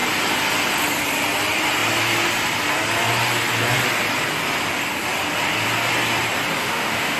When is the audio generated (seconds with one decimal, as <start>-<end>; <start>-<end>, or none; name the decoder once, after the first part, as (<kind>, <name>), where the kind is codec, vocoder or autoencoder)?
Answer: 6.6-7.2 (autoencoder, DAC-VAE)